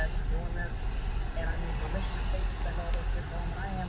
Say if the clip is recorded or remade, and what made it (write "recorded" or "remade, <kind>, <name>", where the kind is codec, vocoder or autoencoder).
recorded